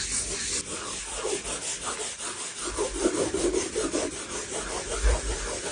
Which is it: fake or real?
real